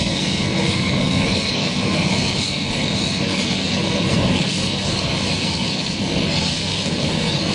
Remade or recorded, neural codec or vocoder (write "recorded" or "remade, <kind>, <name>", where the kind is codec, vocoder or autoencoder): remade, codec, SNAC